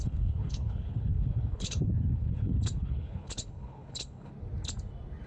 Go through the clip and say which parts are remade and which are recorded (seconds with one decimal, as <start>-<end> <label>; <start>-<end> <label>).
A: 0.0-4.3 remade; 4.3-5.3 recorded